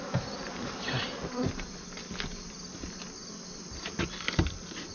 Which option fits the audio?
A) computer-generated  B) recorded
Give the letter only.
B